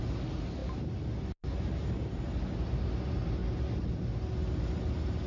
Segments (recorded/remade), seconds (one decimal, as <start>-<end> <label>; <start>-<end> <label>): 0.0-5.3 recorded